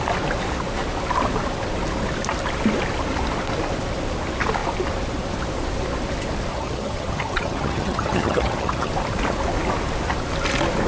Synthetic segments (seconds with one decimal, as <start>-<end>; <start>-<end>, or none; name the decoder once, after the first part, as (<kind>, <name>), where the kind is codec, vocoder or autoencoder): 6.5-8.9 (vocoder, HiFi-GAN)